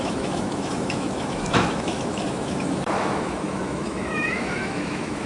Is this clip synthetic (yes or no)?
yes